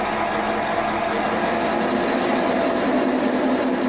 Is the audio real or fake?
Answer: real